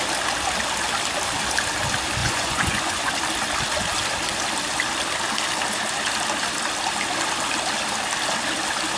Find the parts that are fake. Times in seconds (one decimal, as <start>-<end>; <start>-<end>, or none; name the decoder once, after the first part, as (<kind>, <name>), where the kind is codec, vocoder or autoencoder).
2.2-3.1 (vocoder, Vocos)